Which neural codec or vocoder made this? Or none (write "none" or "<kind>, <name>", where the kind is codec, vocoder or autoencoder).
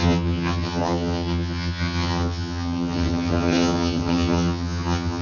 vocoder, HiFi-GAN